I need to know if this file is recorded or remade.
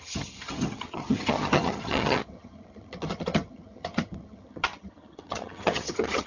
remade